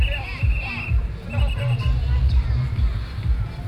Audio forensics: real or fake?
real